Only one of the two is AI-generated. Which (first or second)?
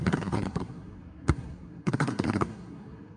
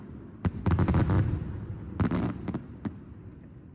first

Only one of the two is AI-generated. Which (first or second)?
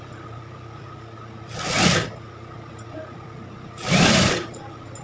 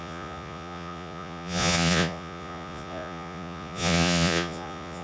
second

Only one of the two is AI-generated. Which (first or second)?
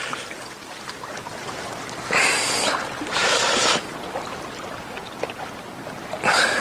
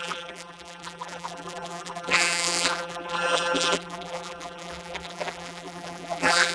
second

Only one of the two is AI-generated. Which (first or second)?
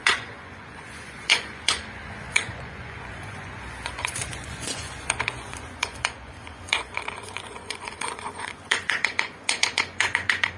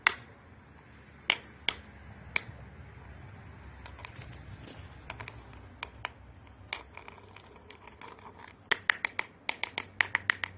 first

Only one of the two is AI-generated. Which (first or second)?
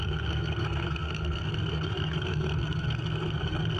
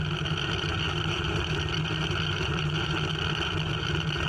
first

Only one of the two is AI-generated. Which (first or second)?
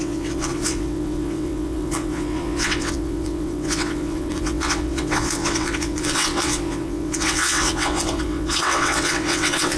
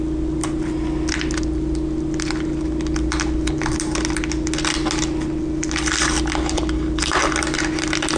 first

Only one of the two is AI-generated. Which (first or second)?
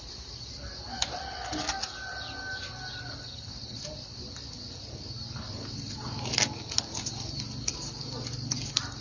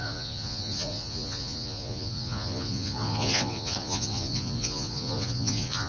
second